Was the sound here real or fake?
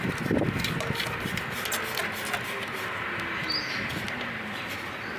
real